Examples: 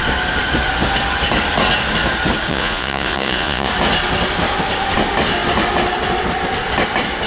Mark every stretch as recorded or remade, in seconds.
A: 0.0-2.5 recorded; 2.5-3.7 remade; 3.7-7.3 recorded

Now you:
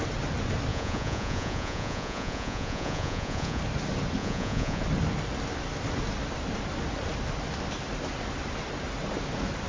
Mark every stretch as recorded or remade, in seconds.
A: 0.0-0.7 recorded; 0.7-3.6 remade; 3.6-4.2 recorded; 4.2-4.8 remade; 4.8-9.7 recorded